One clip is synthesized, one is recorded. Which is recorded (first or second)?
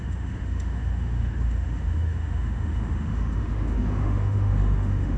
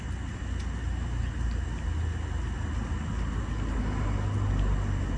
second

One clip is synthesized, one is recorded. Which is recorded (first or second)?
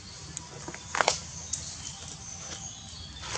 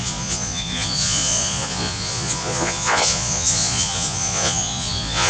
first